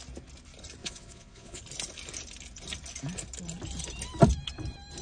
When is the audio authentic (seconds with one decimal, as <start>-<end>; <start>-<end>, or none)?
0.0-0.8; 1.6-5.0